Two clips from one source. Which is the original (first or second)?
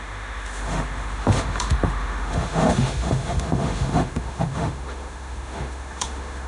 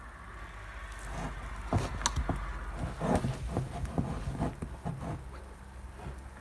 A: second